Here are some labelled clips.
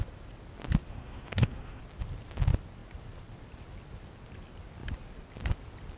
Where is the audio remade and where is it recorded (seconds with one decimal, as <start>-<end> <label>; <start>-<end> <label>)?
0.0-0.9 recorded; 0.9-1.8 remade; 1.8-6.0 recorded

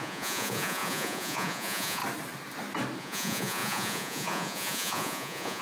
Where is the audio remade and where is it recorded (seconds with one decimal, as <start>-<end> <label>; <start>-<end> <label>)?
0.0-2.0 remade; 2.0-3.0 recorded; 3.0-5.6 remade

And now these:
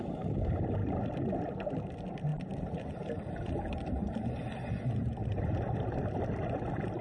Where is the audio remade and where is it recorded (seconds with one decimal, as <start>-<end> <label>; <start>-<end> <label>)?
0.0-2.3 recorded; 2.3-5.8 remade; 5.8-7.0 recorded

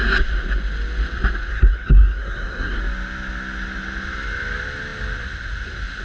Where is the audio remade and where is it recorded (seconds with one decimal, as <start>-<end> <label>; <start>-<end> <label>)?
0.0-1.5 recorded; 1.5-2.8 remade; 2.8-6.0 recorded

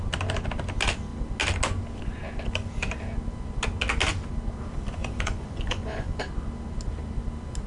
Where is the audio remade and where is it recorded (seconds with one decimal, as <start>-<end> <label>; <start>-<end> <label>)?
0.0-5.0 recorded; 5.0-6.2 remade; 6.2-7.7 recorded

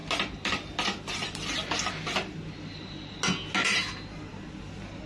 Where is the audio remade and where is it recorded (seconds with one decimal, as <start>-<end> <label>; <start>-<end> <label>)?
0.0-5.1 recorded

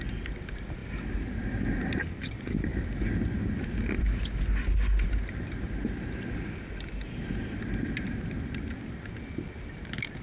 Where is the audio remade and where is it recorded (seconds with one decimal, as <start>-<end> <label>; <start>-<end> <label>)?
0.0-0.8 remade; 0.8-2.1 recorded; 2.1-2.7 remade; 2.7-6.6 recorded; 6.6-10.2 remade

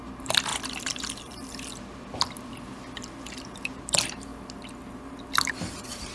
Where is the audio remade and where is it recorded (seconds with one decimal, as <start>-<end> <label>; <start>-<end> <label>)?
0.0-4.3 remade; 4.3-5.3 recorded; 5.3-6.1 remade